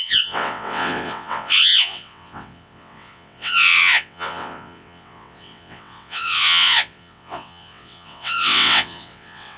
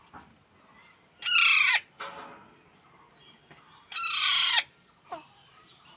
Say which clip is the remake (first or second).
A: first